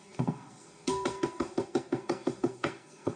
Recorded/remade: remade